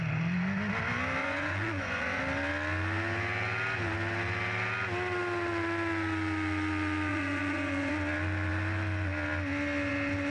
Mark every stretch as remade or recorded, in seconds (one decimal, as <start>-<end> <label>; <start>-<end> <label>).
0.0-1.2 recorded; 1.2-2.2 remade; 2.2-7.1 recorded; 7.1-7.9 remade; 7.9-10.3 recorded